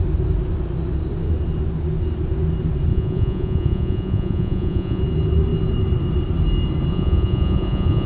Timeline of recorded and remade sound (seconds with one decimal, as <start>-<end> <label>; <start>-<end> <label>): 0.0-2.9 recorded; 2.9-5.0 remade; 5.0-6.9 recorded; 6.9-8.1 remade

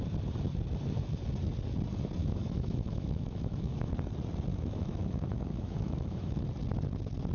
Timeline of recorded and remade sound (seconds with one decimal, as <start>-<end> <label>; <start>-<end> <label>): 0.0-2.2 recorded; 2.2-3.9 remade; 3.9-4.5 recorded; 4.5-6.5 remade; 6.5-7.3 recorded

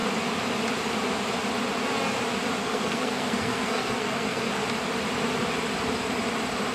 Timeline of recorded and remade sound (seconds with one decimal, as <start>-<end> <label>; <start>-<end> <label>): 0.0-2.6 recorded; 2.6-4.5 remade; 4.5-6.7 recorded

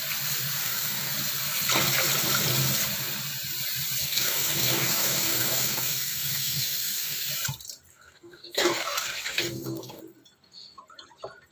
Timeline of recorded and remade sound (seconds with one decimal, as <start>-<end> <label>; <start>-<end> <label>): 0.0-0.6 recorded; 0.6-1.1 remade; 1.1-4.0 recorded; 4.0-7.3 remade; 7.3-7.9 recorded; 7.9-10.0 remade; 10.0-11.5 recorded

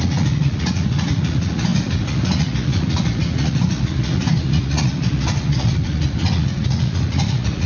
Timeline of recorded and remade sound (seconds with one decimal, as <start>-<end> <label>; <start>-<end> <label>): 0.0-7.7 remade

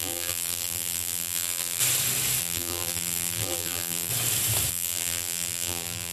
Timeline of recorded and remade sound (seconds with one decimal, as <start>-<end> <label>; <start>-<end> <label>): 0.0-1.8 remade; 1.8-2.4 recorded; 2.4-4.1 remade; 4.1-4.7 recorded; 4.7-6.1 remade